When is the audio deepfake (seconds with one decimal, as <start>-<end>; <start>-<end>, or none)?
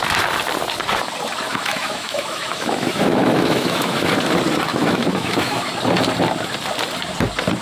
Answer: 1.5-4.1; 4.7-5.7